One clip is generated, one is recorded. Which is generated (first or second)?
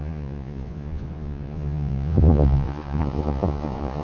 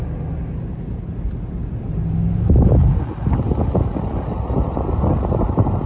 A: first